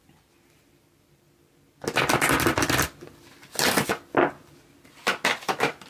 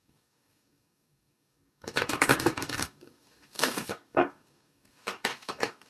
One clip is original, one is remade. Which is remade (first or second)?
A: second